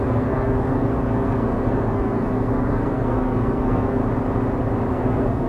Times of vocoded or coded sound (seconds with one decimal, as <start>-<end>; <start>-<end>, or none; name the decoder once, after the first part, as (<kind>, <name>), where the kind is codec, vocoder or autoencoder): 0.0-4.0 (codec, SNAC); 4.9-5.5